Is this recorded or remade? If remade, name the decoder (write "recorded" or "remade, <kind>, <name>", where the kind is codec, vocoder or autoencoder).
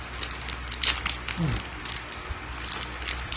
recorded